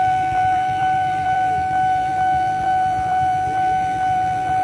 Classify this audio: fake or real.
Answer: fake